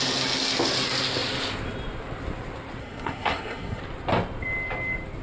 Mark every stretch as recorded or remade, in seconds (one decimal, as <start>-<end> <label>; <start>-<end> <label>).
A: 0.0-2.8 recorded; 2.8-3.8 remade; 3.8-5.2 recorded